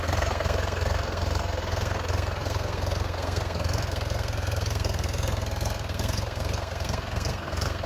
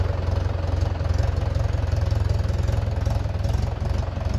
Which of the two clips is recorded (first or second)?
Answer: second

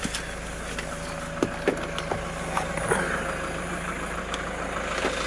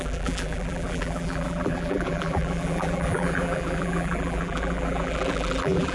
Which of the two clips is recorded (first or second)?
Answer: first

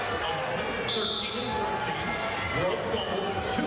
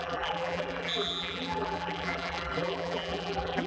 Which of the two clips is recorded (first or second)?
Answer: first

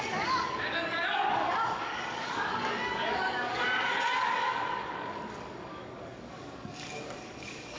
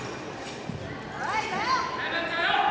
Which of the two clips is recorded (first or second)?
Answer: second